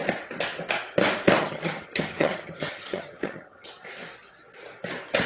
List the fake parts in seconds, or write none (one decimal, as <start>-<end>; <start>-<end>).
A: 1.4-3.7